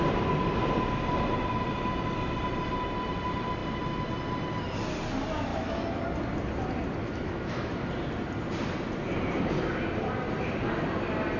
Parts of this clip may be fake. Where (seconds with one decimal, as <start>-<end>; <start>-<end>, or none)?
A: 5.5-6.0; 7.0-7.9